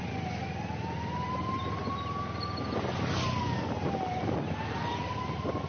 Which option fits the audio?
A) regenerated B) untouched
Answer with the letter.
B